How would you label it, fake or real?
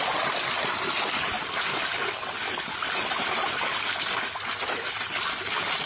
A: real